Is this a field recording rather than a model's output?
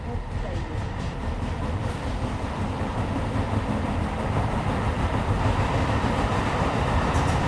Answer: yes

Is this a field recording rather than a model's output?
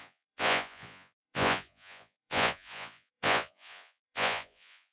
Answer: no